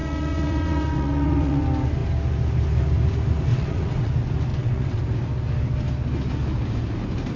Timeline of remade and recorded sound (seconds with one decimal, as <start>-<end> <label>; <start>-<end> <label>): 0.0-1.6 remade; 1.6-3.5 recorded; 3.5-4.1 remade; 4.1-4.5 recorded; 4.5-5.0 remade; 5.0-7.4 recorded